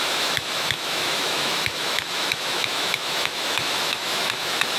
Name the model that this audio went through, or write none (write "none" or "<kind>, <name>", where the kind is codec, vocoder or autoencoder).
autoencoder, DAC-VAE